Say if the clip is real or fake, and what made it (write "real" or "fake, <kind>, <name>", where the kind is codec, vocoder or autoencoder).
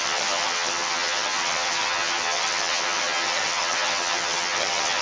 fake, vocoder, HiFi-GAN